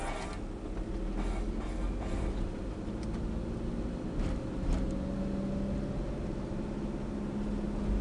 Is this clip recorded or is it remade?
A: recorded